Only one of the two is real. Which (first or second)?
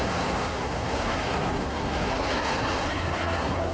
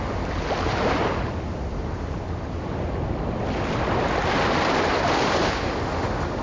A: second